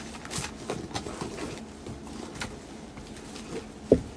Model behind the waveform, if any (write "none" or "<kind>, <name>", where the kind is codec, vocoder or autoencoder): none